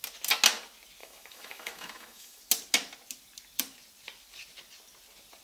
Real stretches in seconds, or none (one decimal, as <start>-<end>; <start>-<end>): 0.0-1.0; 2.4-5.4